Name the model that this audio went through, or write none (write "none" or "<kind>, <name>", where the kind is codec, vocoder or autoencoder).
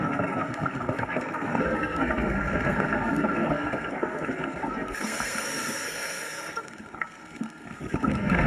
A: codec, SNAC